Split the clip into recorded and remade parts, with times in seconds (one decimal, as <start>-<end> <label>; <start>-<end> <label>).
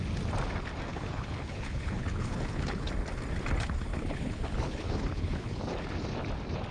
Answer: 0.0-0.9 recorded; 0.9-2.9 remade; 2.9-3.9 recorded; 3.9-5.6 remade; 5.6-6.7 recorded